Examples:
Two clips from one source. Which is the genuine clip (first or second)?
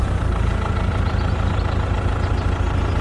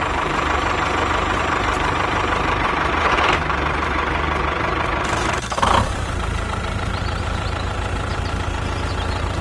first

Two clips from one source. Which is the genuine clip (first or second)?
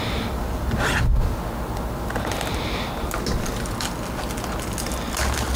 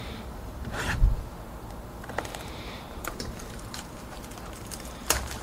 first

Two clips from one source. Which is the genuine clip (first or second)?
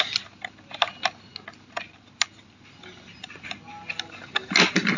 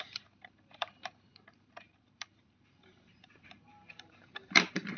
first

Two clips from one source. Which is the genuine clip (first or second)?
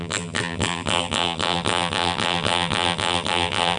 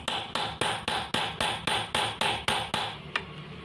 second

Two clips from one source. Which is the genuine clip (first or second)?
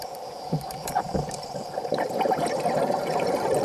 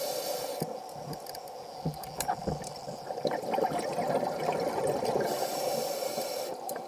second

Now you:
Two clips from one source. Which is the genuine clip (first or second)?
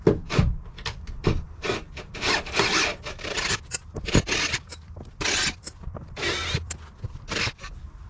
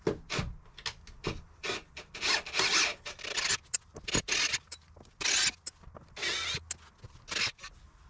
second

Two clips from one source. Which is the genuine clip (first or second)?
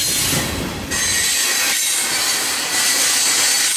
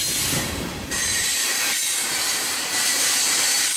first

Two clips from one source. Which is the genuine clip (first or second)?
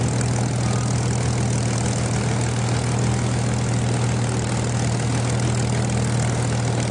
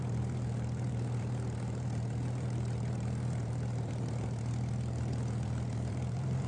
first